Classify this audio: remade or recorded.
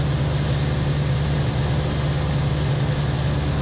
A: recorded